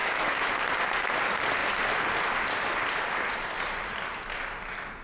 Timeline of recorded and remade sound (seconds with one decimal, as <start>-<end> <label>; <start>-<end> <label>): 0.0-0.5 remade; 0.5-5.0 recorded